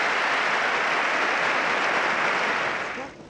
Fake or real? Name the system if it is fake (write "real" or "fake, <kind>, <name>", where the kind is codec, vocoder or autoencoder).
real